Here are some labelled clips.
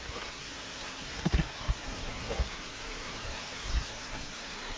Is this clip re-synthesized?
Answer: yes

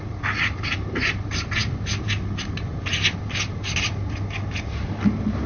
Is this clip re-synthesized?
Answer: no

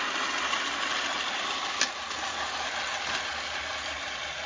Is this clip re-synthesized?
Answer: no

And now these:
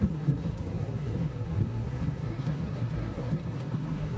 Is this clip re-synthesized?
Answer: yes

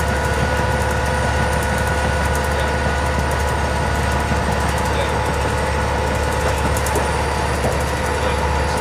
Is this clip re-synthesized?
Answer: no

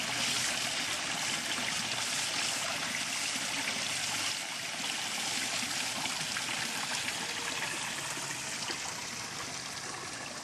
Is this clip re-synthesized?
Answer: no